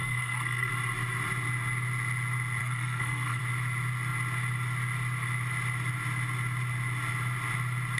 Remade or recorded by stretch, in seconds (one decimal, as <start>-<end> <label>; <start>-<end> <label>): 0.0-0.7 remade; 0.7-2.6 recorded; 2.6-3.4 remade; 3.4-8.0 recorded